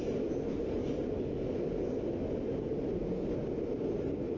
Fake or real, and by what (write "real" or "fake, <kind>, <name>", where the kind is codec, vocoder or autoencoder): real